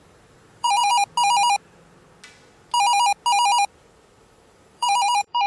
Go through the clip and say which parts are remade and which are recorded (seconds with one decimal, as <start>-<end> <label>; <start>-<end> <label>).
0.0-0.9 remade; 0.9-4.2 recorded; 4.2-5.5 remade